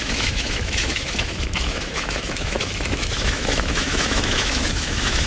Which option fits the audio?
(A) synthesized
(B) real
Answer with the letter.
A